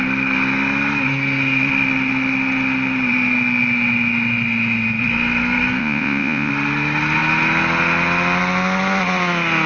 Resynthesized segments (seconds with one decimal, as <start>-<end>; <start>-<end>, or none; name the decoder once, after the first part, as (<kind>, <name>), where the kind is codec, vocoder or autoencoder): 5.8-6.5 (vocoder, Vocos)